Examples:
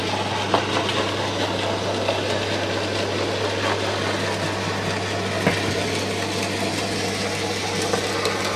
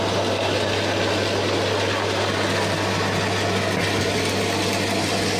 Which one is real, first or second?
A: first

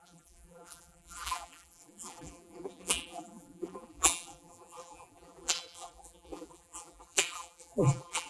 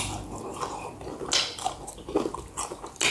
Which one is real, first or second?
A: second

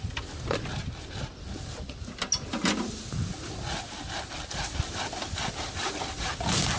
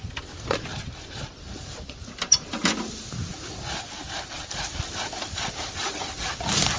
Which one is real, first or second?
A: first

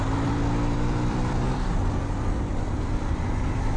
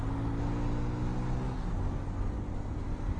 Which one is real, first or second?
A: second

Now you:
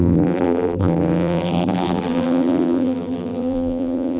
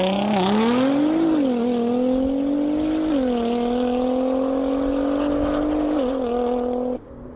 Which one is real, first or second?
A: second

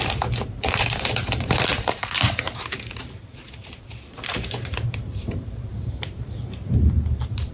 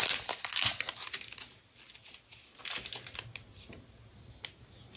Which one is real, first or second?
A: second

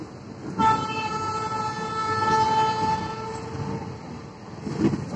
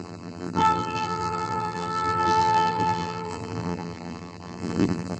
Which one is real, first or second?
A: first